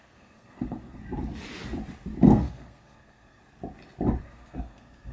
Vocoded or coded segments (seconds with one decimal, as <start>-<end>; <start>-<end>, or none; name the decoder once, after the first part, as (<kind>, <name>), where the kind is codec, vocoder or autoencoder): 0.0-1.0 (codec, SNAC); 2.3-3.4; 4.2-5.1